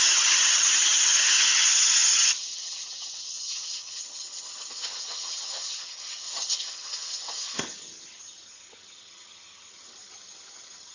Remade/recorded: remade